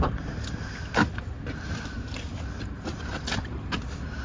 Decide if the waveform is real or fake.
real